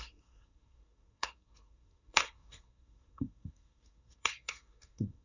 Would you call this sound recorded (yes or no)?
no